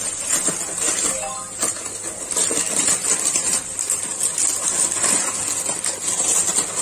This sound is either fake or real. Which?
real